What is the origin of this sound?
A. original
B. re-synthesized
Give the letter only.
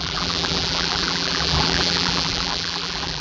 B